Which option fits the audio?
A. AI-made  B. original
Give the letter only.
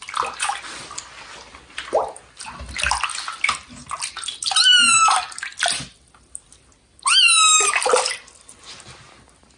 B